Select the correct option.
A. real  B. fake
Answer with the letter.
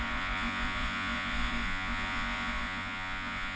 B